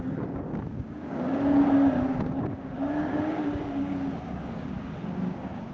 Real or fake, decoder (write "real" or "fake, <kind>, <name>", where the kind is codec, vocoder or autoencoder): fake, codec, DAC